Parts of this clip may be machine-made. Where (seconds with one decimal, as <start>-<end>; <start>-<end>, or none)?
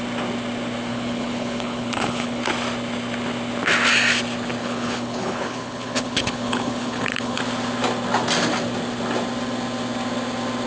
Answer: 0.9-2.4; 4.6-7.4